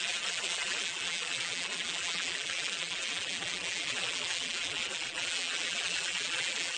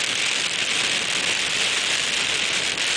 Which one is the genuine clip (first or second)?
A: second